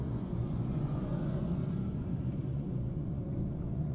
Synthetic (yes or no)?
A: yes